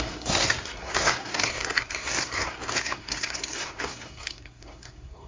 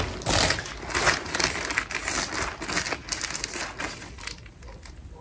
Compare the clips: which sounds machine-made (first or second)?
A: first